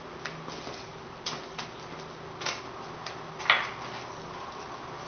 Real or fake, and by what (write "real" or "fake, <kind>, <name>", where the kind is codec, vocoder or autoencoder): real